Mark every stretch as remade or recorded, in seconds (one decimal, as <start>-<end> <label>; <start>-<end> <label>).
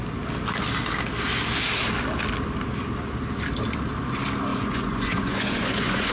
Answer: 0.0-4.5 recorded; 4.5-6.1 remade